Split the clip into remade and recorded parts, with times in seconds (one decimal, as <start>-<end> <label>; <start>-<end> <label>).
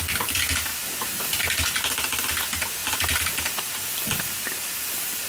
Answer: 0.0-5.3 recorded